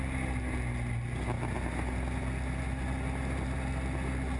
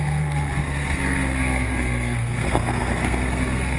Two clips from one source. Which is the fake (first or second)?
second